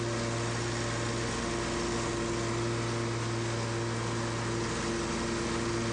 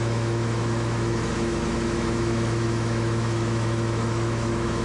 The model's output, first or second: second